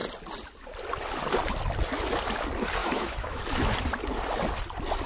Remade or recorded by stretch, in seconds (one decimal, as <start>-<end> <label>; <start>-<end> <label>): 0.0-2.8 recorded; 2.8-3.4 remade; 3.4-5.1 recorded